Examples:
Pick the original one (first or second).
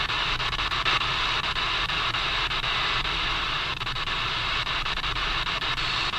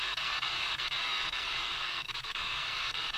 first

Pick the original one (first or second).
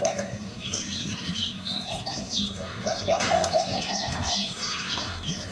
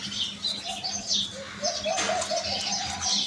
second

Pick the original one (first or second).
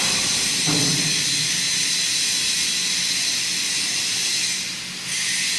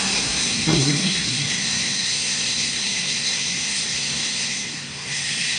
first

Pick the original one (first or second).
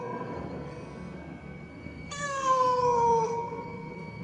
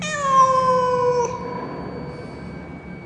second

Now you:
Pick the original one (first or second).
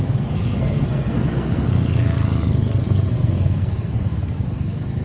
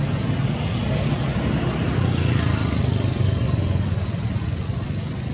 second